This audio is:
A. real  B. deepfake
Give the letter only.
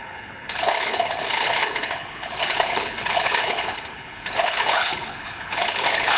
B